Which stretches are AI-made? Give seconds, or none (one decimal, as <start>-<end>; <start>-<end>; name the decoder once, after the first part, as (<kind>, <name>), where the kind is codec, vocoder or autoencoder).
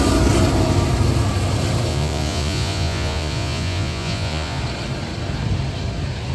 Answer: 1.9-4.6 (vocoder, Vocos)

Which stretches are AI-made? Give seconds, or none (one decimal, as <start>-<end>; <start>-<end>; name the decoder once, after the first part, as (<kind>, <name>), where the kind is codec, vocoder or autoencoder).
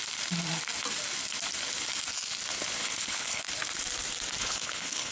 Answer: 2.8-3.5 (codec, HILCodec); 4.4-5.1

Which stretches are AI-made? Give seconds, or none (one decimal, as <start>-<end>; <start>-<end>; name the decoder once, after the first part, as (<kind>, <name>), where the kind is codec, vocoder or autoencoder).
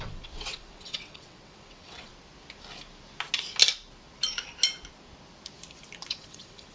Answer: 0.0-2.1 (vocoder, WaveNeXt); 6.1-6.7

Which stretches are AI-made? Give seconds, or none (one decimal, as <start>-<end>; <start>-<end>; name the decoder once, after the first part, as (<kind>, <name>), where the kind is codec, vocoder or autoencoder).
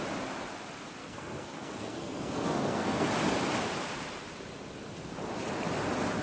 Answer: 1.0-3.1 (codec, SNAC)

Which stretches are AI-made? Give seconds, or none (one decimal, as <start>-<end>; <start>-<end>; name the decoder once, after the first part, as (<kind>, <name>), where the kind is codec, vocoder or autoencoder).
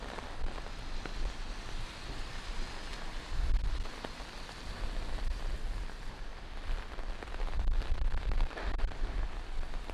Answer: 2.9-3.5 (vocoder, BigVGAN v2); 6.3-7.9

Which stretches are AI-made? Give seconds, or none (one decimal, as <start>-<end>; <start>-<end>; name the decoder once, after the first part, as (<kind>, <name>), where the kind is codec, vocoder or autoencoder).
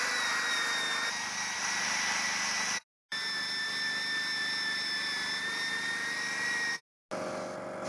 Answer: none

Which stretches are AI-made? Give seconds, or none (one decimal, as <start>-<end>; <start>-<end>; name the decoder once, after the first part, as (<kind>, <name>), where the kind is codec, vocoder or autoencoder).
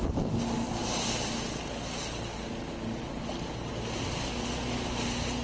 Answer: none